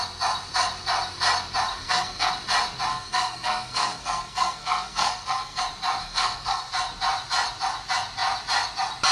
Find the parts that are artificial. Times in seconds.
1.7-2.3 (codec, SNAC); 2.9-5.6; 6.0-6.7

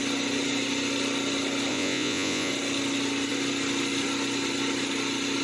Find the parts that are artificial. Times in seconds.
1.7-2.5 (vocoder, Vocos)

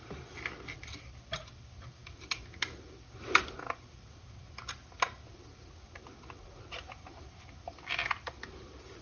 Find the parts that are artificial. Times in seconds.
none

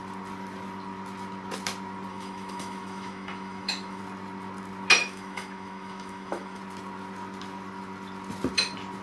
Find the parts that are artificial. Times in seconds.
2.1-4.0 (autoencoder, DAC-VAE); 5.0-6.6

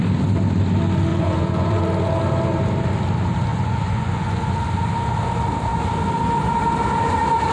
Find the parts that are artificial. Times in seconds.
1.1-1.8 (vocoder, Vocos); 3.5-4.5

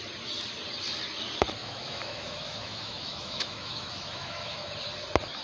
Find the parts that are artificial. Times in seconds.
1.6-4.7 (autoencoder, DAC-VAE)